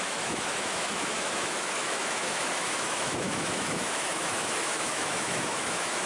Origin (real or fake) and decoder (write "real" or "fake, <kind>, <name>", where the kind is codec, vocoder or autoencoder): fake, autoencoder, DAC-VAE